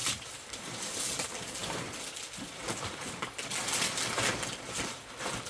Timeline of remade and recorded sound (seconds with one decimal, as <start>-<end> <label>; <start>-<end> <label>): 0.0-0.8 remade; 0.8-1.6 recorded; 1.6-4.3 remade; 4.3-5.5 recorded